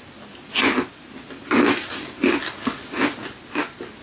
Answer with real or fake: real